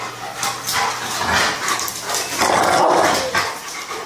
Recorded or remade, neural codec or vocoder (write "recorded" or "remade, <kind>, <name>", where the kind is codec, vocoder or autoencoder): recorded